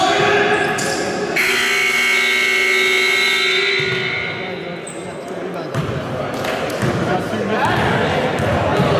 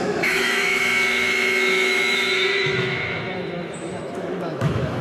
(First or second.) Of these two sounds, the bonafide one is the first